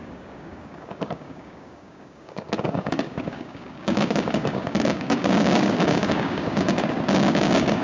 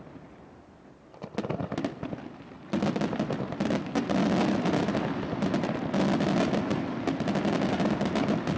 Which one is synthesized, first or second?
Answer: first